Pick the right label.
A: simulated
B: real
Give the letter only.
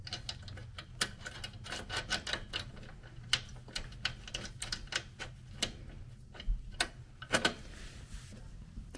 B